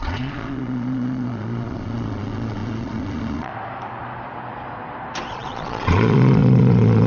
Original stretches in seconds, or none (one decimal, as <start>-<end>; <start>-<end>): 3.5-5.3